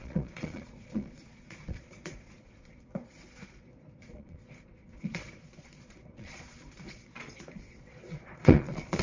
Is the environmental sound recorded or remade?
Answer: remade